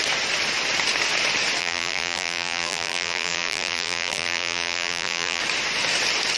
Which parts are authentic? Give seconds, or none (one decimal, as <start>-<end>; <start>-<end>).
0.0-1.6; 5.4-6.4